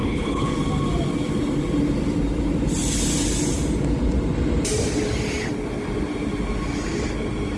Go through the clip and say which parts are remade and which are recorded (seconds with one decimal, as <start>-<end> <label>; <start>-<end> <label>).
0.0-0.5 remade; 0.5-7.6 recorded